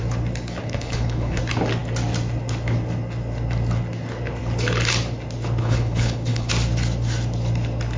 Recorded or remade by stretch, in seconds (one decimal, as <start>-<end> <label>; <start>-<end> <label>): 0.0-0.6 recorded; 0.6-1.4 remade; 1.4-5.6 recorded; 5.6-6.5 remade; 6.5-8.0 recorded